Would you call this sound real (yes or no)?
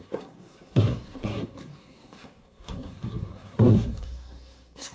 no